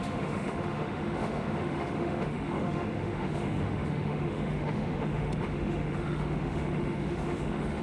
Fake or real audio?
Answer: fake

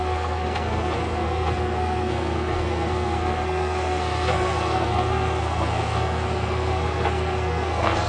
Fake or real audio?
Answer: fake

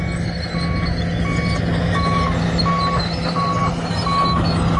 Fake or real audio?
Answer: real